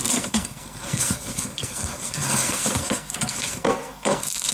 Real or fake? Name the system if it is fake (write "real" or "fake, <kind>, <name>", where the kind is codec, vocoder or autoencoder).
fake, codec, SNAC